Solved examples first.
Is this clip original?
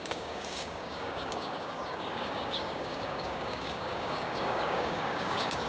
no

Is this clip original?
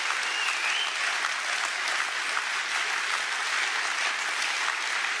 yes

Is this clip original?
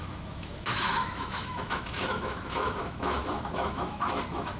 no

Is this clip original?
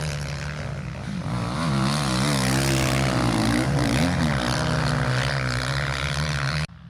yes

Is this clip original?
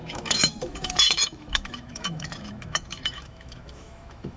no